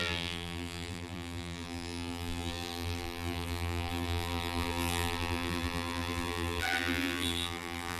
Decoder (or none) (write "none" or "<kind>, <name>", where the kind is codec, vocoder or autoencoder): vocoder, BigVGAN v2